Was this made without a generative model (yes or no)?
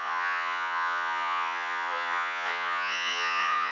no